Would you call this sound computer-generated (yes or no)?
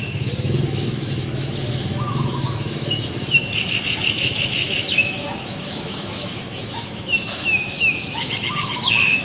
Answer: yes